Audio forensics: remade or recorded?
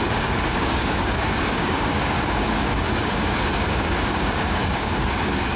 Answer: remade